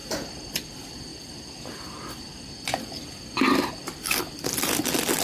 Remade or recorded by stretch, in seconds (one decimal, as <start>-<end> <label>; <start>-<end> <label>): 0.0-0.6 remade; 0.6-5.2 recorded

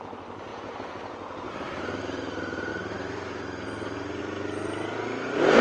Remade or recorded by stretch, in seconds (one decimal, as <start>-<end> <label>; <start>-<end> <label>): 0.0-0.5 recorded; 0.5-1.5 remade; 1.5-5.6 recorded

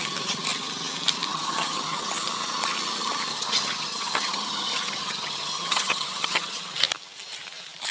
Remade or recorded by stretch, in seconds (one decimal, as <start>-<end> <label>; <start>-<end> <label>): 0.0-1.3 recorded; 1.3-2.1 remade; 2.1-3.3 recorded; 3.3-6.6 remade; 6.6-7.9 recorded

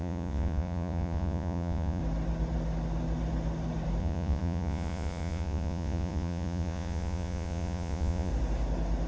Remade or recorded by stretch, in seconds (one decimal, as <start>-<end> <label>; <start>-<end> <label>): 0.0-2.0 remade; 2.0-4.0 recorded; 4.0-8.3 remade; 8.3-9.1 recorded